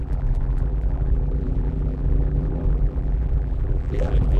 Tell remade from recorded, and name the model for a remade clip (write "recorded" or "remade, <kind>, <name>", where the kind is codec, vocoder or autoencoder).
remade, vocoder, BigVGAN v2